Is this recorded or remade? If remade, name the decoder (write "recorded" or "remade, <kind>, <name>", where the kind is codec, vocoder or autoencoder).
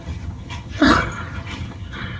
remade, vocoder, HiFi-GAN